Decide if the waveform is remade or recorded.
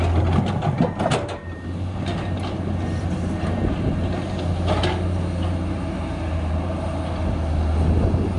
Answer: recorded